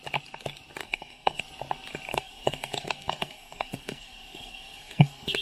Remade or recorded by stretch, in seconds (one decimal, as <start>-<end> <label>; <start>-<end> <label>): 0.0-0.8 recorded; 0.8-1.4 remade; 1.4-2.1 recorded; 2.1-5.4 remade